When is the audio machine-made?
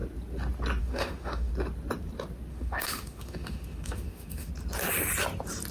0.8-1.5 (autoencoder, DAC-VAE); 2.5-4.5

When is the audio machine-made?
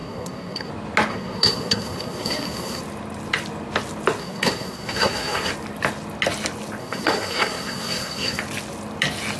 0.0-0.7 (codec, SNAC); 1.1-2.8; 4.2-5.5; 6.8-8.4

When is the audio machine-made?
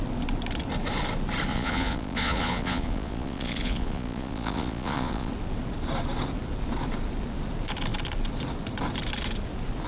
1.5-5.3 (vocoder, Vocos)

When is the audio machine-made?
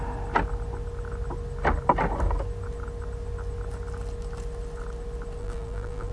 5.4-6.1 (vocoder, BigVGAN v2)